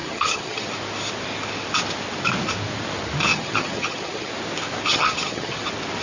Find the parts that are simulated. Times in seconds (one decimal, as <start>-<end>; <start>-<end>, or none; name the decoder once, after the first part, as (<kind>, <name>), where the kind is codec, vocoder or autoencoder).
0.0-0.7 (vocoder, HiFi-GAN); 3.3-4.3; 4.9-5.6

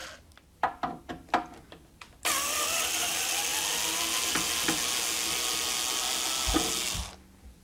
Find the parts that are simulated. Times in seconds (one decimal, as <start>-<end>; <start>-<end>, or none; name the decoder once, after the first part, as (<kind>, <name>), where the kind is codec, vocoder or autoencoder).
none

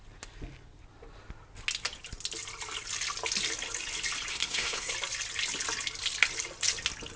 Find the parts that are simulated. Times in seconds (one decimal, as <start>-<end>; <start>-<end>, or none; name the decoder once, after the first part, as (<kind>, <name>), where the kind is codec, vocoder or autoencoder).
4.3-4.9 (codec, SNAC)

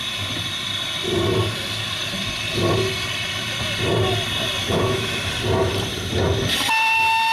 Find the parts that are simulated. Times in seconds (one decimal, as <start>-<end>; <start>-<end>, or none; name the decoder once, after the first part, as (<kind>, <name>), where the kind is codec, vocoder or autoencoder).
4.6-5.3 (autoencoder, DAC-VAE)

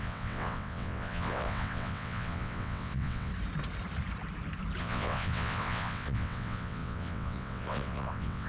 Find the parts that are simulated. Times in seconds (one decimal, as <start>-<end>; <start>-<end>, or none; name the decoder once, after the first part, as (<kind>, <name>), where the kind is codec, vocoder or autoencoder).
0.0-3.3 (vocoder, WaveNeXt); 4.8-8.5

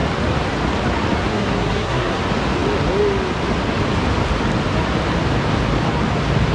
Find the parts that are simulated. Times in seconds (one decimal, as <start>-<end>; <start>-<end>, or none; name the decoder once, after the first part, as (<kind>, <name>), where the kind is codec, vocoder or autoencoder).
1.3-2.2 (codec, SNAC)

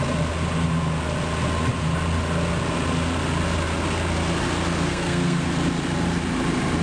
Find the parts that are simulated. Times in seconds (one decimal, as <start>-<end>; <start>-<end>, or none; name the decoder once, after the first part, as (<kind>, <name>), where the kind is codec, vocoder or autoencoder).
4.9-5.5 (codec, SNAC)

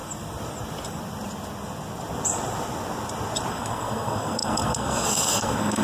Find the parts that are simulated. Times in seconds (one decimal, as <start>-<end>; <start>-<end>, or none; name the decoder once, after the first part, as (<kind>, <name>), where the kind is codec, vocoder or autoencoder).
3.5-5.8 (codec, SNAC)